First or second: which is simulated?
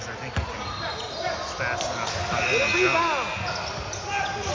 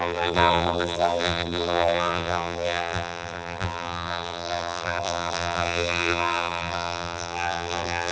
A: second